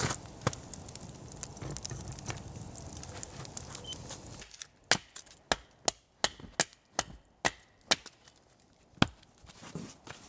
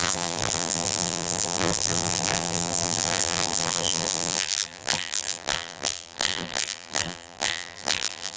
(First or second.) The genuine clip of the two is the first